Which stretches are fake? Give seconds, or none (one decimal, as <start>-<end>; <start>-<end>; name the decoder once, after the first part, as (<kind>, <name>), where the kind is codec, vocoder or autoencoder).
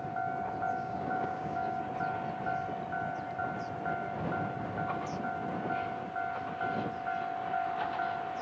0.7-1.8 (codec, DAC)